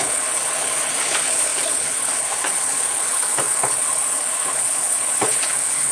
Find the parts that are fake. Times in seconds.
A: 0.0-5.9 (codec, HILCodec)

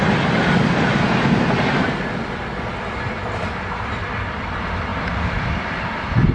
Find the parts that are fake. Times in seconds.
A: none

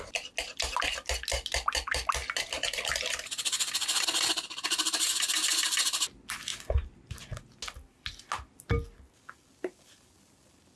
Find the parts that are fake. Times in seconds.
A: none

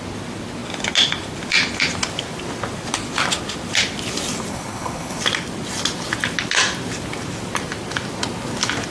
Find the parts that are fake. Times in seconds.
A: 4.5-5.2 (codec, HILCodec)

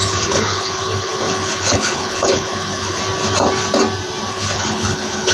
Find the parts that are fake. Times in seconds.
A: 0.0-3.0 (codec, HILCodec); 4.3-5.3

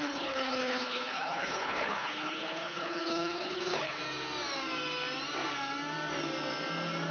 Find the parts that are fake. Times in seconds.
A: 0.0-4.0 (codec, HILCodec)

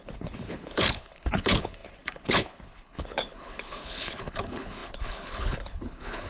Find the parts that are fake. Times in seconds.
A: 0.0-6.3 (codec, HILCodec)